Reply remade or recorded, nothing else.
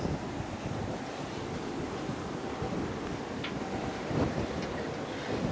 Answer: recorded